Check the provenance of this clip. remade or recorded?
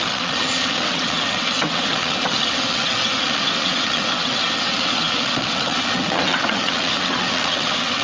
remade